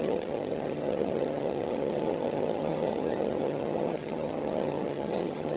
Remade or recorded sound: remade